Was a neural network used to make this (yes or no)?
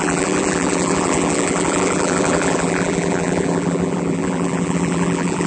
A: yes